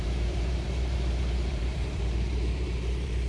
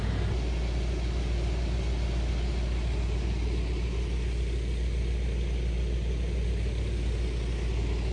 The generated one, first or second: first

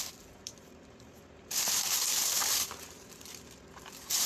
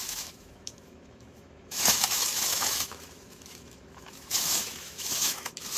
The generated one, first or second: second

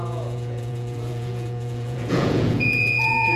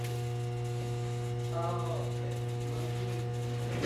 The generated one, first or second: first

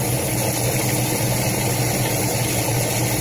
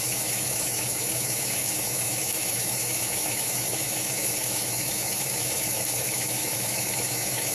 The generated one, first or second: second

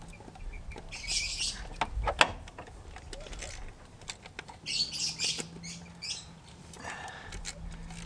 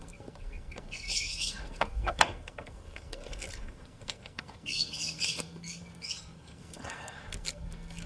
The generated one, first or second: second